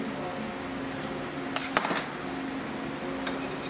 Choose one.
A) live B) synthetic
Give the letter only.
A